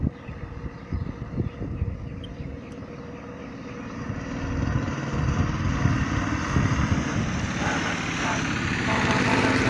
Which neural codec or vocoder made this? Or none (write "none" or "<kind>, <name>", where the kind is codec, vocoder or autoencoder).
none